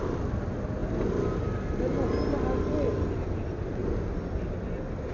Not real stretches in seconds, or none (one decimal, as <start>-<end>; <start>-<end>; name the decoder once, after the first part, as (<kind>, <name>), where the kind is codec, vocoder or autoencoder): none